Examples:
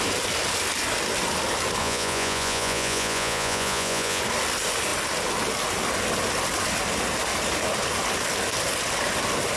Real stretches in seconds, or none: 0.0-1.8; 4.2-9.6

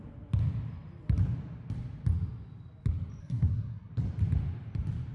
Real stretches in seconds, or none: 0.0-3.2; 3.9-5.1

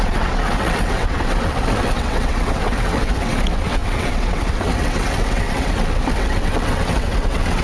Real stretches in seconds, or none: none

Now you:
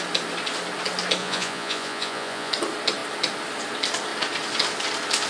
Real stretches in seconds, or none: 0.0-1.2; 2.5-5.3

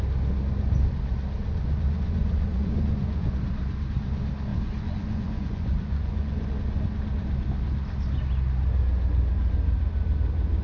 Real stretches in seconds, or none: 0.0-1.4; 3.4-4.5; 6.5-10.6

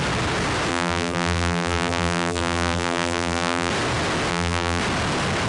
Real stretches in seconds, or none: 0.0-0.7; 3.7-4.3; 4.8-5.5

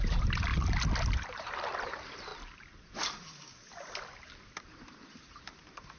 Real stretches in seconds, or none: 0.5-1.3; 2.3-4.6

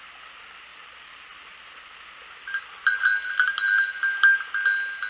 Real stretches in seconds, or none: 0.0-0.7; 2.6-5.1